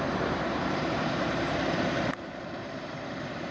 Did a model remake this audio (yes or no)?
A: yes